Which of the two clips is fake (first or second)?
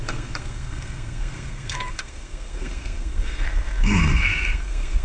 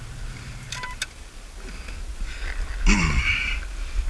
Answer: first